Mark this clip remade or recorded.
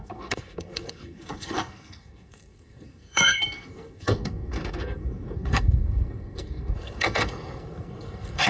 remade